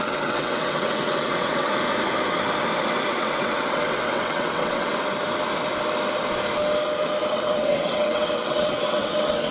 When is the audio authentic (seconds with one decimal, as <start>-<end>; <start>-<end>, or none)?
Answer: 1.7-3.1; 4.9-7.3

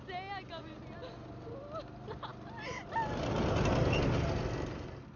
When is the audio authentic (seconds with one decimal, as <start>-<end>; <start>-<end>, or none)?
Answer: 0.0-5.2

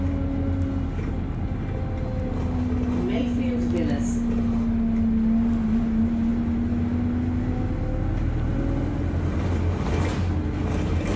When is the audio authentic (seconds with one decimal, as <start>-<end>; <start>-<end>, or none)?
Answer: 0.0-11.2

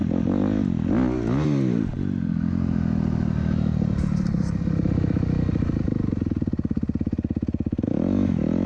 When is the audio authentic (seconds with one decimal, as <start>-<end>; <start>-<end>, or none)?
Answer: 0.0-8.7

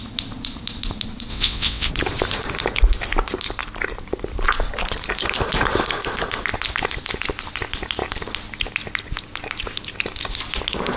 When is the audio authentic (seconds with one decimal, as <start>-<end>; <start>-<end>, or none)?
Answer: 0.0-1.3; 1.9-11.0

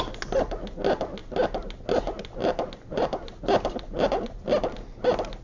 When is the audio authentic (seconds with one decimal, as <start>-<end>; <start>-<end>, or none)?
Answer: 0.0-5.4

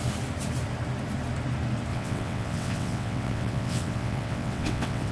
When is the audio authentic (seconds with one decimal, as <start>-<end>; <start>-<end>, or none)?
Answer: 0.0-1.9